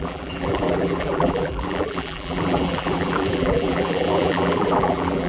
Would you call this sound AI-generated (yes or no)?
yes